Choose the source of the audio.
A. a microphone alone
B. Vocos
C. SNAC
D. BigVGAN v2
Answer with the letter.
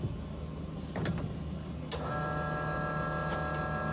A